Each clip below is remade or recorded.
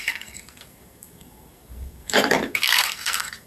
remade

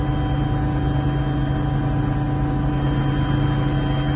recorded